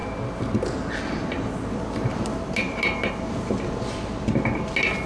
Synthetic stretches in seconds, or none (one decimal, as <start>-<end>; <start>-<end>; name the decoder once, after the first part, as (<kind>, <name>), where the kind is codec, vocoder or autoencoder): none